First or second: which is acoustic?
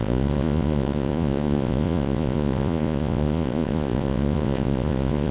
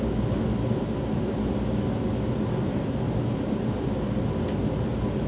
second